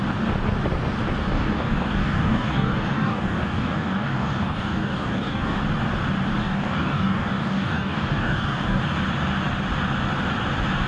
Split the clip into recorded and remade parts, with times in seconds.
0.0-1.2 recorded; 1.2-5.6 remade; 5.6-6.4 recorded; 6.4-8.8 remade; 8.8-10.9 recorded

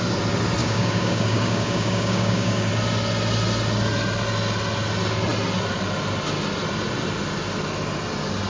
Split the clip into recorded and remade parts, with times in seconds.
0.0-0.6 recorded; 0.6-2.7 remade; 2.7-8.5 recorded

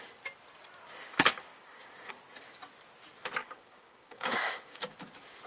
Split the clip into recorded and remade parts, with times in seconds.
0.0-1.5 recorded; 1.5-2.1 remade; 2.1-3.4 recorded; 3.4-4.8 remade; 4.8-5.5 recorded

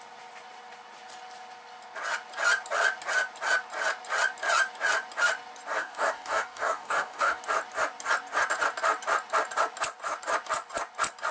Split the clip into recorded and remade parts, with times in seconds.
0.0-5.7 recorded; 5.7-7.4 remade; 7.4-11.3 recorded

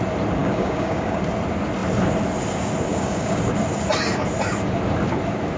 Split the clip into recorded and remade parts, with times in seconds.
0.0-0.4 recorded; 0.4-1.2 remade; 1.2-2.9 recorded; 2.9-3.4 remade; 3.4-5.6 recorded

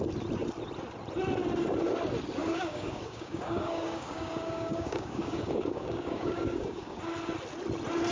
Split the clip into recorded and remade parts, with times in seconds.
0.0-2.4 recorded; 2.4-7.0 remade; 7.0-8.1 recorded